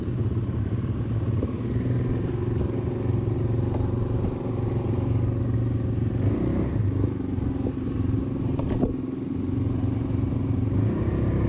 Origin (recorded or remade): recorded